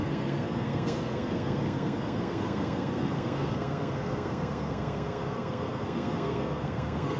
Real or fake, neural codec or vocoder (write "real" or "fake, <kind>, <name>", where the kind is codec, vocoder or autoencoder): fake, codec, SNAC